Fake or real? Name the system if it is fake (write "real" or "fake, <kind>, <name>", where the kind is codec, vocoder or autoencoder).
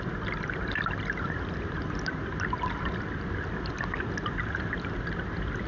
fake, vocoder, BigVGAN v2